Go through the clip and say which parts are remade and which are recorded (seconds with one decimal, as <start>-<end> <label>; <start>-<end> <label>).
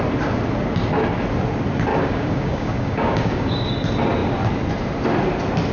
0.0-1.9 recorded; 1.9-3.7 remade; 3.7-5.7 recorded